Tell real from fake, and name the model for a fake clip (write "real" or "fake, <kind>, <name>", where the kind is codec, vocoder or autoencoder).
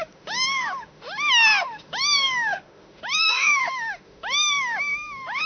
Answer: fake, autoencoder, DAC-VAE